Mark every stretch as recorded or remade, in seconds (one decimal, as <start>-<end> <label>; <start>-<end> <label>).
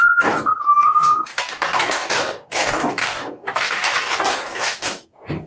0.0-5.5 remade